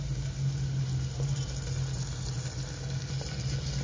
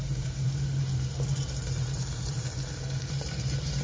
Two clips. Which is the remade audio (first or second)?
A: second